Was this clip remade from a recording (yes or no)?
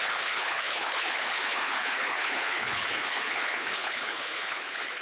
yes